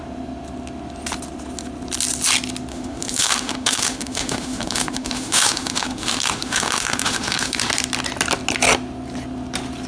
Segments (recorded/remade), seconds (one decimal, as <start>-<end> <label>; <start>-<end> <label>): 0.0-2.7 recorded; 2.7-7.7 remade; 7.7-9.9 recorded